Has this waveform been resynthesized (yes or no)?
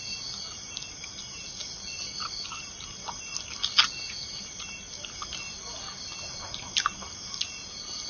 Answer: no